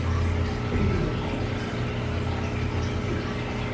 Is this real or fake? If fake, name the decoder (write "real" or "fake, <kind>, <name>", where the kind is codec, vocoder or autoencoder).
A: real